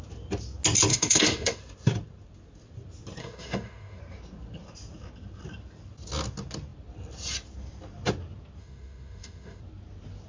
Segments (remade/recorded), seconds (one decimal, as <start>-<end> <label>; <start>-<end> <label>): 0.0-0.9 recorded; 0.9-1.6 remade; 1.6-3.2 recorded; 3.2-4.0 remade; 4.0-8.6 recorded; 8.6-9.6 remade; 9.6-10.3 recorded